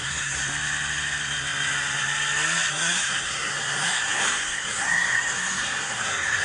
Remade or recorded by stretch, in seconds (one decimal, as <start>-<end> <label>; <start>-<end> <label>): 0.0-0.4 remade; 0.4-2.7 recorded; 2.7-6.4 remade